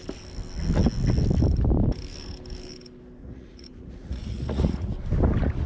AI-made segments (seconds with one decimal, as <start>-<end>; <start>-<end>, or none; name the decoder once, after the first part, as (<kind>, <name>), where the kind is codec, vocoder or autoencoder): 3.2-4.9 (vocoder, Vocos)